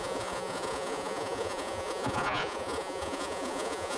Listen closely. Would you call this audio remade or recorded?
remade